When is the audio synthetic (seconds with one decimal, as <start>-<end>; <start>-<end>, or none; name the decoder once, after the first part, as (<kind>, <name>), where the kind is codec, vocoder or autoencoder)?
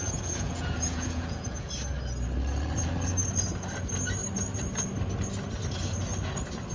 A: 0.0-1.7 (vocoder, Vocos)